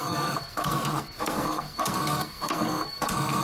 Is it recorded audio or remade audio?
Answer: remade